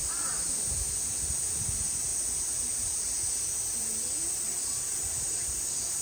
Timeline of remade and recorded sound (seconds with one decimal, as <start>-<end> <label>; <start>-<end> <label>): 0.0-2.1 recorded; 2.1-5.6 remade; 5.6-6.0 recorded

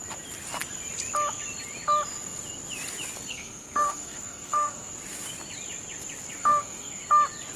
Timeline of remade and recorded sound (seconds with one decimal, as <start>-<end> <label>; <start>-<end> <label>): 0.0-3.3 recorded; 3.3-4.9 remade; 4.9-6.4 recorded; 6.4-7.0 remade; 7.0-7.6 recorded

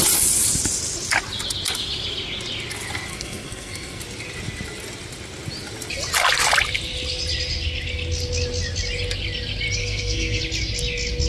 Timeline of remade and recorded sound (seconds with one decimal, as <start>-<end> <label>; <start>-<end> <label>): 0.0-3.1 recorded; 3.1-4.0 remade; 4.0-9.8 recorded; 9.8-10.4 remade; 10.4-11.3 recorded

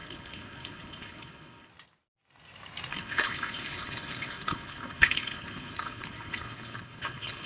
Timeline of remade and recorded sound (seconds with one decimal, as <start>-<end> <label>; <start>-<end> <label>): 0.0-1.7 remade; 1.7-2.9 recorded; 2.9-7.5 remade

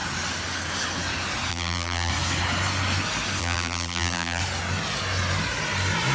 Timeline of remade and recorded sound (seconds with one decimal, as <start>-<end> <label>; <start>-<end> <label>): 0.0-1.5 recorded; 1.5-2.1 remade; 2.1-3.4 recorded; 3.4-4.4 remade; 4.4-6.1 recorded

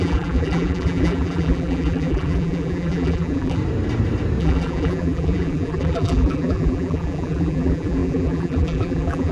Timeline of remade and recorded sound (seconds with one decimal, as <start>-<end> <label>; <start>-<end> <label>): 0.0-3.6 remade; 3.6-4.4 recorded; 4.4-9.3 remade

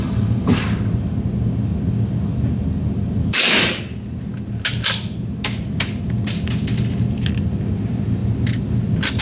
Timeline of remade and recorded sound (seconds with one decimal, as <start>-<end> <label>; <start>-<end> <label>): 0.0-3.2 recorded; 3.2-3.8 remade; 3.8-9.2 recorded

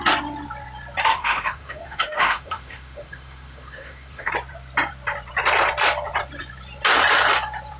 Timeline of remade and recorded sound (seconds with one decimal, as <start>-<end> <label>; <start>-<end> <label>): 0.0-1.1 recorded; 1.1-4.3 remade; 4.3-7.8 recorded